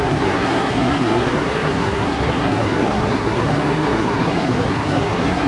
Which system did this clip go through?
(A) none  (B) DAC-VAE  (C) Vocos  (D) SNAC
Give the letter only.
D